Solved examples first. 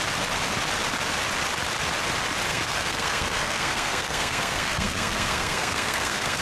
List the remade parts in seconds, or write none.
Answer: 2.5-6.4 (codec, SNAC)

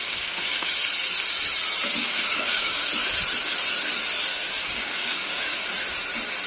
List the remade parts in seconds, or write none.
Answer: 0.0-0.7 (codec, DAC); 2.0-2.9; 4.3-5.7

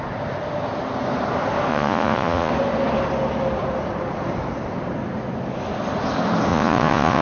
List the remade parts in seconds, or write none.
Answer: 1.7-2.5 (vocoder, Vocos); 6.5-7.2